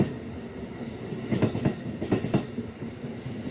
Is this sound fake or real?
real